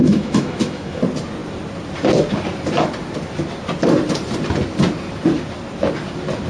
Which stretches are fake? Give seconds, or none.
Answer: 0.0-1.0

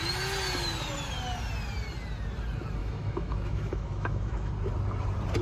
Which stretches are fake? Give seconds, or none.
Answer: 2.8-4.5

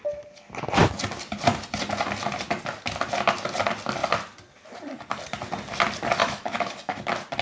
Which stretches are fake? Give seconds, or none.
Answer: 6.2-7.0

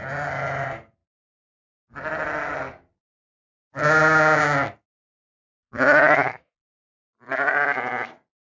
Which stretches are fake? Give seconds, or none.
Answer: 5.1-6.7

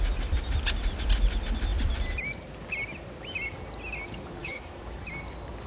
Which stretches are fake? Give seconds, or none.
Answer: 4.4-5.0

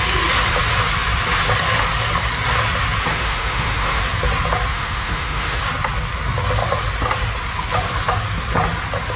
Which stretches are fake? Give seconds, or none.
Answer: 3.1-4.0; 4.7-5.6

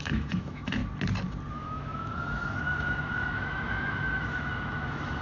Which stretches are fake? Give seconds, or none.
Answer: 0.0-0.8; 1.5-5.2

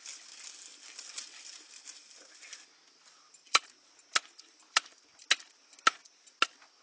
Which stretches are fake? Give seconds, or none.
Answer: none